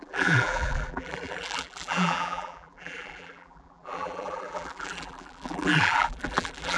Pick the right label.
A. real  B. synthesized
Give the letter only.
B